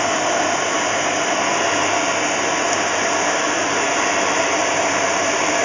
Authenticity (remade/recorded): recorded